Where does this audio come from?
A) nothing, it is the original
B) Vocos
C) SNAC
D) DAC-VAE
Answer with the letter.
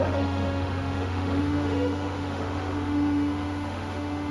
D